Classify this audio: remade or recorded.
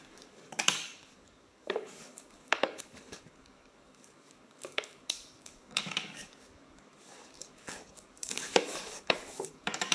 remade